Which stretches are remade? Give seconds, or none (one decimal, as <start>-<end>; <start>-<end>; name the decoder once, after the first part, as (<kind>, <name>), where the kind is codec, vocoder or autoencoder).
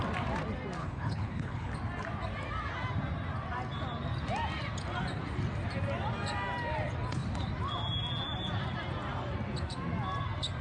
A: 0.8-1.7 (codec, HILCodec)